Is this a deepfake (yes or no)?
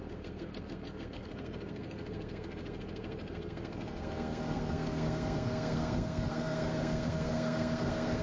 yes